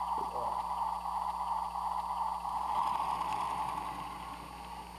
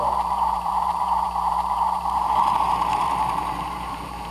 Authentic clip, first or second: first